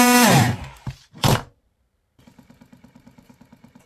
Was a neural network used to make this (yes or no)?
yes